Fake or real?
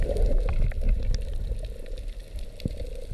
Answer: real